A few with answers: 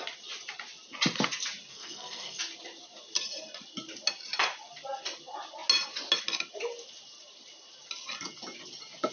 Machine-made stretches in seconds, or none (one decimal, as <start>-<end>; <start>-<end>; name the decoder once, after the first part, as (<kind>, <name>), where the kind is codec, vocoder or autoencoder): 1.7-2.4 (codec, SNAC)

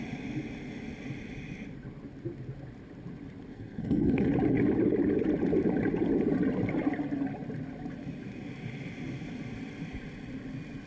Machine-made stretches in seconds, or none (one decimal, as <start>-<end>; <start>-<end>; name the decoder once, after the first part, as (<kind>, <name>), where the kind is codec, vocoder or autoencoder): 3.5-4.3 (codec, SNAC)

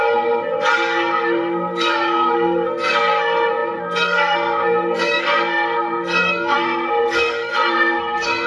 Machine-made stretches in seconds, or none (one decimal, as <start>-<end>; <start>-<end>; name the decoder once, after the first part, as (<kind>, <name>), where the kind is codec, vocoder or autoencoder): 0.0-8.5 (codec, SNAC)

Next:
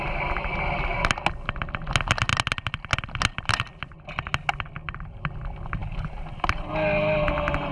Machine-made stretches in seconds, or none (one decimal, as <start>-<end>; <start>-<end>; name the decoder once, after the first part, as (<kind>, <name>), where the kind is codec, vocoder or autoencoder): none

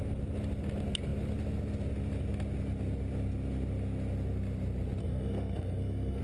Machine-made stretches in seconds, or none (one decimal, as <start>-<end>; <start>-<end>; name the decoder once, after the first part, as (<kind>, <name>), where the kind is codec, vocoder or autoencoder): 5.0-6.2 (codec, SNAC)